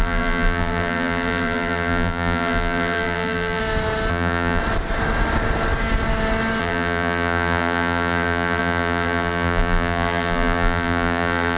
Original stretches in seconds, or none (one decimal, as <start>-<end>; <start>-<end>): 3.6-4.1; 4.6-6.6